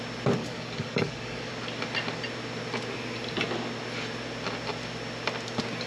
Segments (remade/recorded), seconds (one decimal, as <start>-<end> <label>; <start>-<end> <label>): 0.0-0.4 recorded; 0.4-1.5 remade; 1.5-5.9 recorded